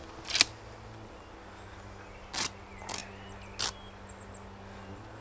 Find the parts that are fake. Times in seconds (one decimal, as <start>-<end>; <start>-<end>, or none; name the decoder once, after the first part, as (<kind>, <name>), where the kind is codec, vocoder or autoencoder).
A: none